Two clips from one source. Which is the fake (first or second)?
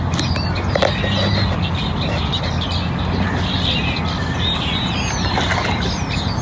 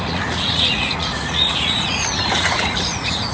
second